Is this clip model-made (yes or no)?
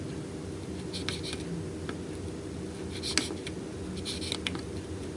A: no